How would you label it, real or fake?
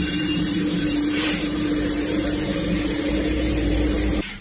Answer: fake